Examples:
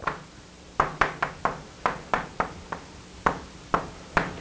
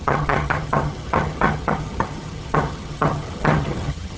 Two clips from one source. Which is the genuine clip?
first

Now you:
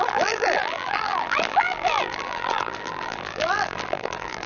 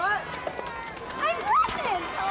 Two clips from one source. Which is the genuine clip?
second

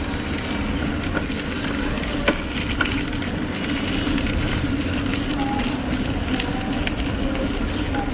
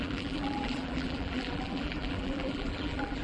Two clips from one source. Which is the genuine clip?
first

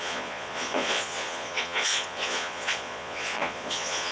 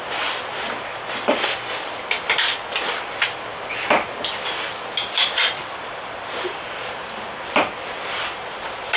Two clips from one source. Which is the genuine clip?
second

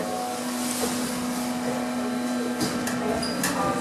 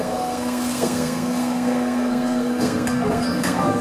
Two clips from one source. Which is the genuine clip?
first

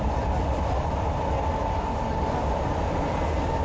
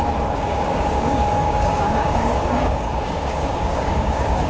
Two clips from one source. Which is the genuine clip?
first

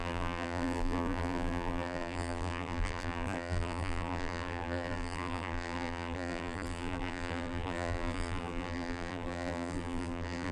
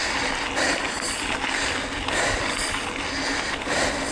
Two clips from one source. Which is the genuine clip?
second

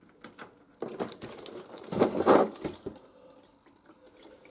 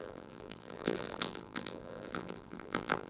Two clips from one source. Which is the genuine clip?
first